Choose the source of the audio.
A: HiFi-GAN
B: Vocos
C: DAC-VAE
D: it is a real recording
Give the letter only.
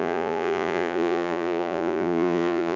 B